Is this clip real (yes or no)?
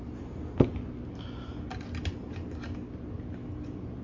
yes